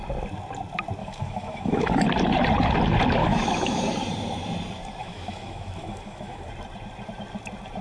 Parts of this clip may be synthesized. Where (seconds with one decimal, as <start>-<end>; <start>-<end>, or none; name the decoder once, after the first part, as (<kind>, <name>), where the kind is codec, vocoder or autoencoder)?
1.0-1.9 (autoencoder, DAC-VAE); 3.2-3.8; 5.0-6.5